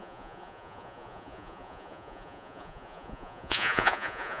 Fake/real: fake